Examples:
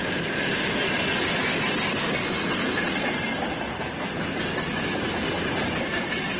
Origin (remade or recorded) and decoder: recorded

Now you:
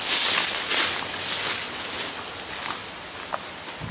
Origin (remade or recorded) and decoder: recorded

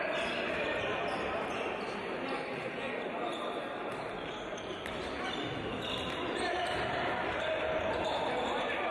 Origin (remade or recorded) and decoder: remade, vocoder, BigVGAN v2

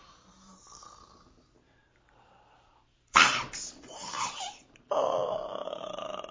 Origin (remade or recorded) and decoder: remade, vocoder, BigVGAN v2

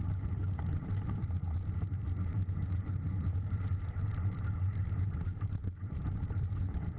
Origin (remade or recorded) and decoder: remade, vocoder, BigVGAN v2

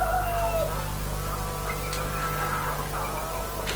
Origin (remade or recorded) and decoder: recorded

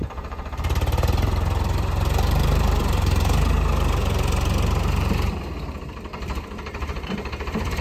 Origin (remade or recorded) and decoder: remade, vocoder, BigVGAN v2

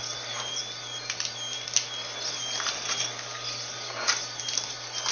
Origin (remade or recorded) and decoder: recorded